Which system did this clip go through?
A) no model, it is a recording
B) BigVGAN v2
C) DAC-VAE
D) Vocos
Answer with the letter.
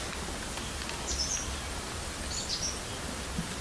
A